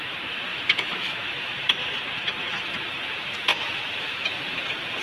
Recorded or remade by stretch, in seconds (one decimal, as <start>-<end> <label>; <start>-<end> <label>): 0.0-0.5 recorded; 0.5-1.9 remade; 1.9-3.5 recorded; 3.5-4.6 remade; 4.6-5.0 recorded